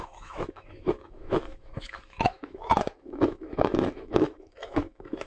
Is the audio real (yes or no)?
no